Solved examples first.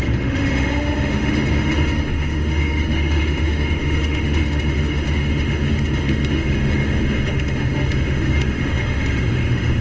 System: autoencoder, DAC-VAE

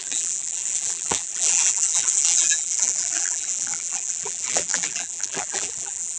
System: vocoder, BigVGAN v2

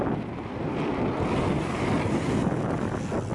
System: none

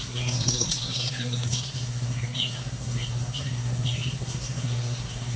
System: codec, SNAC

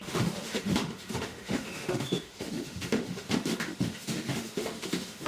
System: autoencoder, DAC-VAE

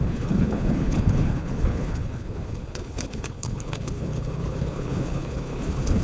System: codec, HILCodec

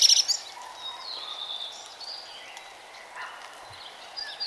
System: none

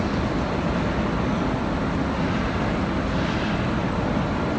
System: none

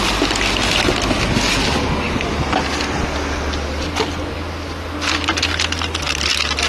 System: none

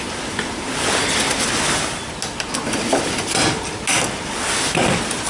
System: none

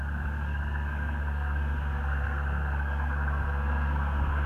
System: codec, SNAC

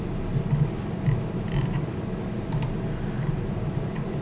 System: none